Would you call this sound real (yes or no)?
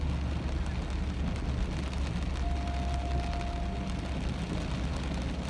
yes